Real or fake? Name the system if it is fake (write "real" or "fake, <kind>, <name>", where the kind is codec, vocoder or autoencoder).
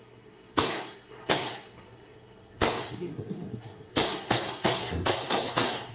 fake, codec, SNAC